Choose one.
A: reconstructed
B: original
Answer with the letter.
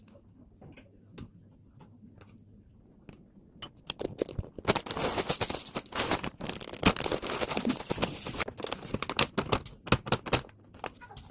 B